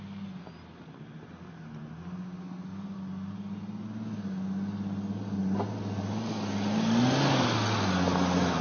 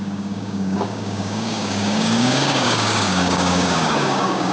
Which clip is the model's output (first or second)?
second